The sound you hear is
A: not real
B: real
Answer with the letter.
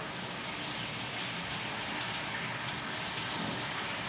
B